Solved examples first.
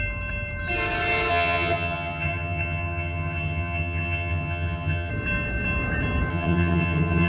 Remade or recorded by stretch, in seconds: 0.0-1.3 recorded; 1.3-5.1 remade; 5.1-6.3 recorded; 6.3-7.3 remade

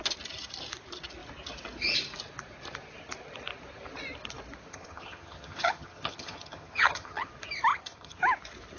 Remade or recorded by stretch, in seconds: 0.0-4.7 recorded; 4.7-7.3 remade; 7.3-7.7 recorded; 7.7-8.2 remade; 8.2-8.8 recorded